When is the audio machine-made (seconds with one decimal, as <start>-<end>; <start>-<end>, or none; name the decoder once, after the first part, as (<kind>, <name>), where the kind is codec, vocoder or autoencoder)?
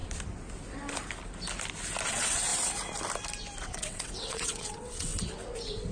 2.1-2.5 (vocoder, WaveNeXt); 3.6-5.1